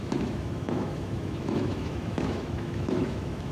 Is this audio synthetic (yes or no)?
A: yes